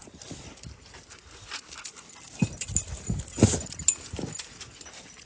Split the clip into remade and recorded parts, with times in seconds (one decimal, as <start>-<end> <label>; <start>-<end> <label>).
0.0-5.3 recorded